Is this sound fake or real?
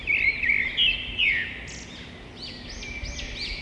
real